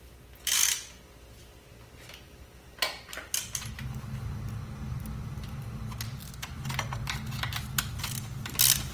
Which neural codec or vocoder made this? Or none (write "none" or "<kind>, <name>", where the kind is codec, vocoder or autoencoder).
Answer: none